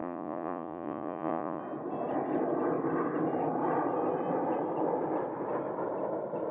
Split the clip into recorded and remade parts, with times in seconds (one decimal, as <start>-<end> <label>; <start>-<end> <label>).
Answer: 0.0-1.6 remade; 1.6-6.5 recorded